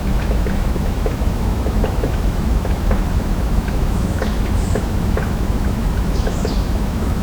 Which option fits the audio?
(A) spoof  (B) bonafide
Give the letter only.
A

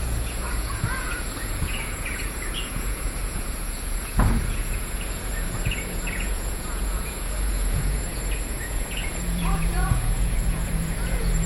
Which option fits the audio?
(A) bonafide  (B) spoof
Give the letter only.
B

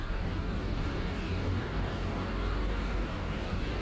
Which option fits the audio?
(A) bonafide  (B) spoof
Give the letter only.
B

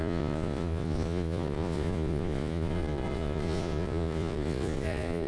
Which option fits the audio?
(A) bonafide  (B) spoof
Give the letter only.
B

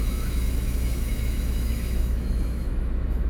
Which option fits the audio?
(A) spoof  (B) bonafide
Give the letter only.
A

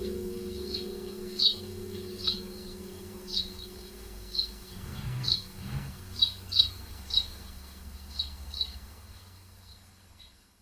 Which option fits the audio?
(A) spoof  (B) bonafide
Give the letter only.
A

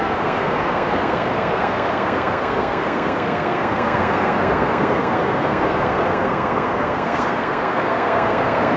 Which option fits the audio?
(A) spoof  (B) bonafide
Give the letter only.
A